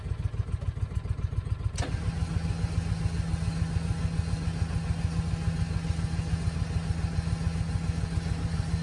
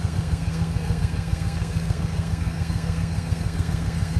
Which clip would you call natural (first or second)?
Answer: first